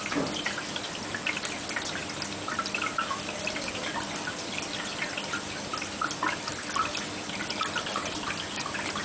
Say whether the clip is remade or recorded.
recorded